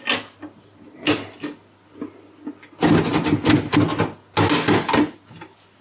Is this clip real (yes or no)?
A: yes